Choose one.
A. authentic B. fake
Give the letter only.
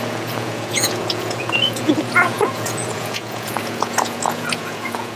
B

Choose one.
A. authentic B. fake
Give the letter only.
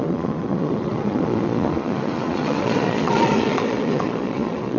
B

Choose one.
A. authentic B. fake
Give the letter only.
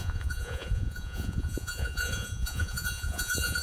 B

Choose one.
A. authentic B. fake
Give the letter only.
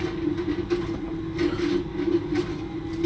A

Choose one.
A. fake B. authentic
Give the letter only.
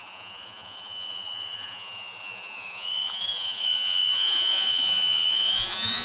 A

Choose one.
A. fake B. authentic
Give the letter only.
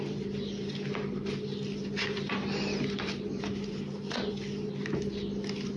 B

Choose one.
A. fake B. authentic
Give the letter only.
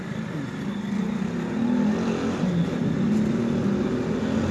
B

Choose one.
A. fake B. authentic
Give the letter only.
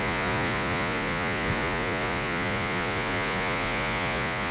A